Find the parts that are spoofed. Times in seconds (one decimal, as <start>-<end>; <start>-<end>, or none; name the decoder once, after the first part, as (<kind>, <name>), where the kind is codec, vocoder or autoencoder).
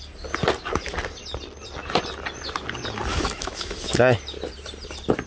3.1-3.9 (autoencoder, DAC-VAE)